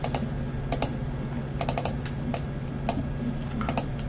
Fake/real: real